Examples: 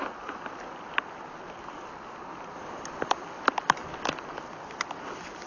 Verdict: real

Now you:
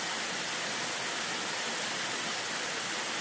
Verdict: real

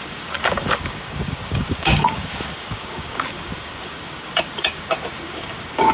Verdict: fake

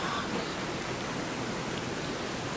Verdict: real